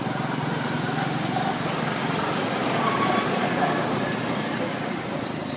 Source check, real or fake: real